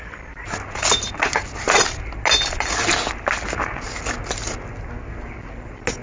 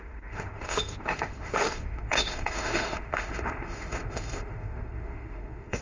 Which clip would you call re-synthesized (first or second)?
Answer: second